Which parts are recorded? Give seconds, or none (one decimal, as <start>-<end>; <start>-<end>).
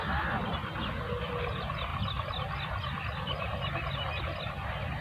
0.0-5.0